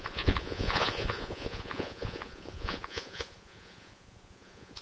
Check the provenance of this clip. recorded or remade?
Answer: remade